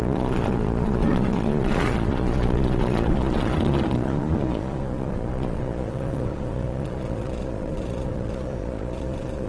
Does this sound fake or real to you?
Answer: fake